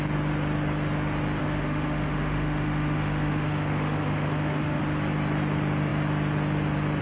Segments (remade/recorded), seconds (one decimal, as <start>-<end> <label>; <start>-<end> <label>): 0.0-1.4 recorded; 1.4-4.8 remade; 4.8-7.0 recorded